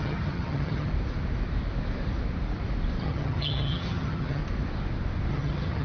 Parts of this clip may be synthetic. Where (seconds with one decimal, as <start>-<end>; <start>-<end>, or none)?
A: 0.0-0.9; 3.0-4.4; 5.3-5.8